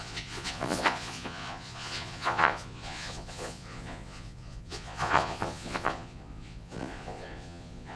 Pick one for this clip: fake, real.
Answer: fake